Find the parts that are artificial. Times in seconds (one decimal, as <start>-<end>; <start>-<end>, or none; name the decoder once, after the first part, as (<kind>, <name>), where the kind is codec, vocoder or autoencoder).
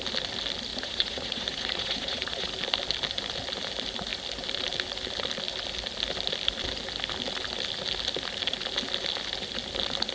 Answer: 0.7-2.5 (vocoder, Vocos)